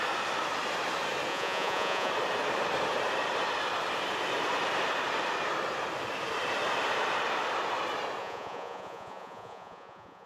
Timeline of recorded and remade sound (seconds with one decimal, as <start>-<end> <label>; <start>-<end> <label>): 0.0-1.3 recorded; 1.3-2.1 remade; 2.1-8.2 recorded; 8.2-10.3 remade